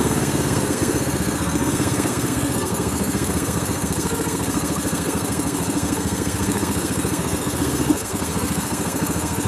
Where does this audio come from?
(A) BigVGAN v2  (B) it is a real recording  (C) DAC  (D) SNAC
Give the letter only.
D